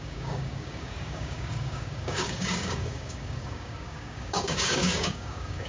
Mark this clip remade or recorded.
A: remade